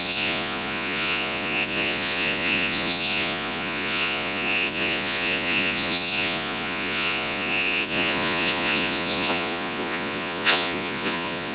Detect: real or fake fake